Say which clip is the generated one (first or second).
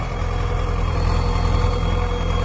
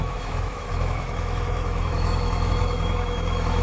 second